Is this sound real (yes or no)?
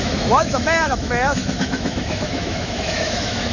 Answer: no